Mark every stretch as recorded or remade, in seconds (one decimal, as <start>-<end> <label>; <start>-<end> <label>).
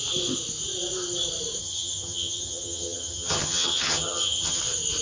0.0-1.6 recorded; 1.6-4.6 remade; 4.6-5.0 recorded